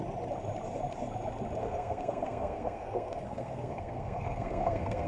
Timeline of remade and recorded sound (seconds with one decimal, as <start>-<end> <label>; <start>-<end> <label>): 0.0-1.6 recorded; 1.6-5.1 remade